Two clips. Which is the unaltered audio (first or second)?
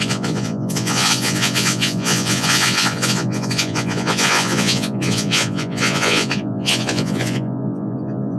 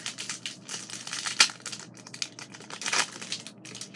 second